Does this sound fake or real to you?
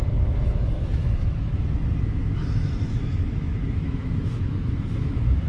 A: fake